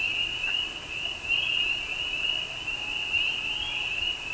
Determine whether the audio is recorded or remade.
recorded